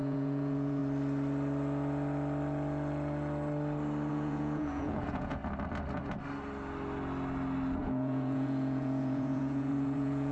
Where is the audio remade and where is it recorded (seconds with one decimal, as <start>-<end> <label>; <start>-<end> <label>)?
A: 0.0-0.8 remade; 0.8-4.1 recorded; 4.1-5.4 remade; 5.4-7.8 recorded; 7.8-10.3 remade